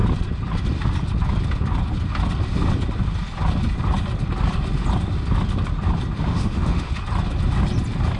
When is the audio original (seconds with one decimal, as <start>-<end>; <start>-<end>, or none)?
0.0-6.3; 6.9-8.2